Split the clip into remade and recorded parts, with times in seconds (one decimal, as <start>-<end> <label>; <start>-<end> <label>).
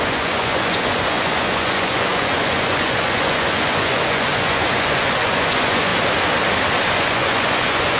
0.0-5.9 remade; 5.9-6.9 recorded; 6.9-8.0 remade